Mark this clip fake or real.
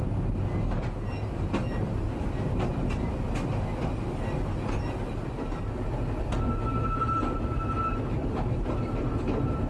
real